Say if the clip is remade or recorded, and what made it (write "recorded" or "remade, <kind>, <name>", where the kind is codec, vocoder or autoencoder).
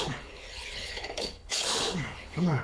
remade, codec, HILCodec